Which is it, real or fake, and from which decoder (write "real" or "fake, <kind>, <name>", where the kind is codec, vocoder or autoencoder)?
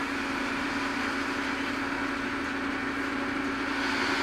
real